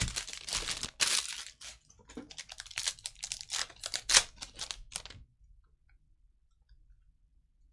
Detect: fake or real real